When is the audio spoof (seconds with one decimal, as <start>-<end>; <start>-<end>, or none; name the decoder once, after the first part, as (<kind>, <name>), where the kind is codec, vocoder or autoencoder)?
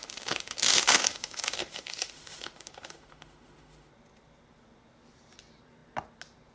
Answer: 0.0-3.9 (autoencoder, DAC-VAE)